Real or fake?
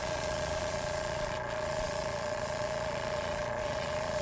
fake